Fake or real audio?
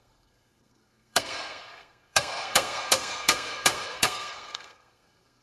fake